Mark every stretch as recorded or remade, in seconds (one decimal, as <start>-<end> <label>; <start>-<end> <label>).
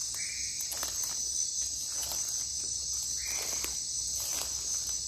0.0-5.1 recorded